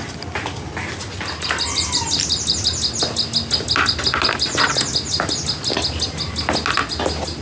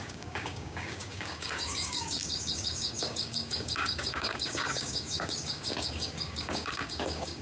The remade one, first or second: second